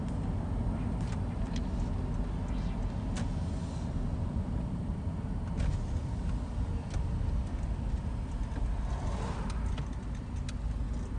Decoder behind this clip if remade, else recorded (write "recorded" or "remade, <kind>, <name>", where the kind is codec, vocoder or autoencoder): recorded